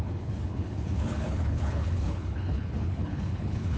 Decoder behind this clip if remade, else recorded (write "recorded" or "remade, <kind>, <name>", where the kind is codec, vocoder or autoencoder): remade, codec, HILCodec